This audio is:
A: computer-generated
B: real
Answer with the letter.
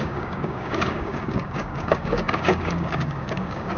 A